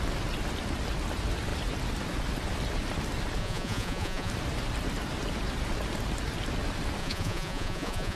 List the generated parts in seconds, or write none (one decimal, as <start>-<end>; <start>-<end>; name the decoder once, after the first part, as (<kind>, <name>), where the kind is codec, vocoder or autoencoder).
3.4-4.3 (vocoder, Vocos); 7.0-8.2